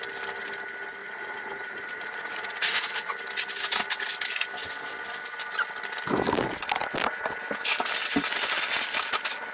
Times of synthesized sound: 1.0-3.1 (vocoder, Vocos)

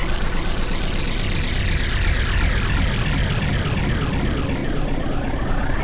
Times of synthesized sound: 4.6-5.8 (vocoder, Vocos)

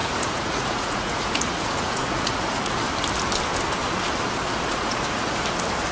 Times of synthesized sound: 0.0-2.7 (vocoder, Vocos); 4.7-5.4

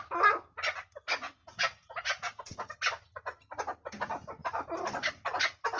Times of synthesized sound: 1.4-2.7 (vocoder, Vocos)

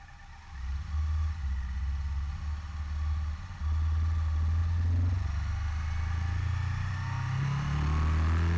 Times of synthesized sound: none

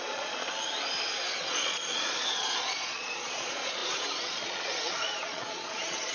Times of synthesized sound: 0.0-0.4 (vocoder, Vocos); 1.4-6.1

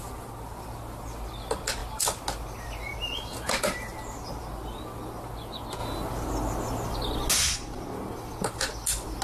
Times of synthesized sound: none